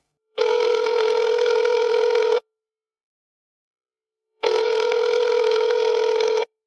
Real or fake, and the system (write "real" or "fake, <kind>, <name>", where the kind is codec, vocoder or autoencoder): fake, codec, SNAC